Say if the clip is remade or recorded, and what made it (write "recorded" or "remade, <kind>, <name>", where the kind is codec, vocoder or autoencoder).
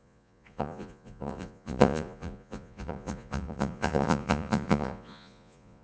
remade, vocoder, Vocos